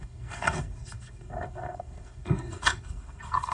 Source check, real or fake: fake